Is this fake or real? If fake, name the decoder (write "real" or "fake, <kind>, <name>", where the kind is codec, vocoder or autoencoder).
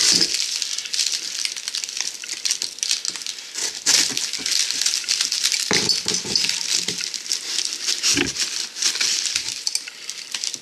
real